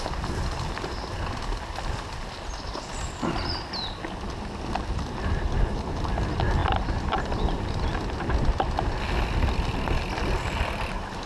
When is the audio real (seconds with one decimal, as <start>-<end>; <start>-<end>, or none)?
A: 0.0-11.3